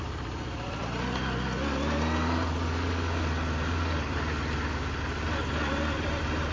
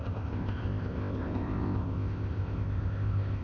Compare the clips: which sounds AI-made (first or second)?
second